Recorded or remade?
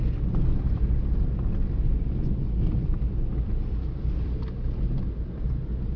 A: recorded